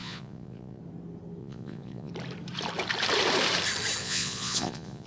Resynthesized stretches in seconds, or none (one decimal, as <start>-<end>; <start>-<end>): 0.0-0.8; 1.4-2.1; 4.0-5.1